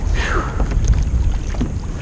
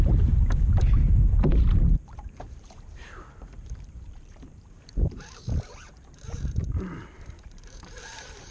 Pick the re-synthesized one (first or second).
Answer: second